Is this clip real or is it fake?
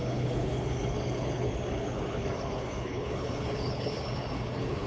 fake